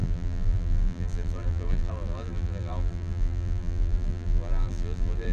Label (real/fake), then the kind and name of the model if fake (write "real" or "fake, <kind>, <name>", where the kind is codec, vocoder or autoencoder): fake, vocoder, BigVGAN v2